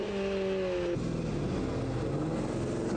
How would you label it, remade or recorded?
recorded